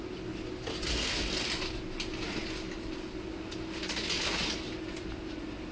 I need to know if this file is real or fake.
real